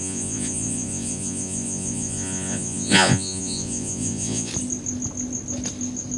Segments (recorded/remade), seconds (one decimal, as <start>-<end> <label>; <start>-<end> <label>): 0.0-4.5 remade; 4.5-6.2 recorded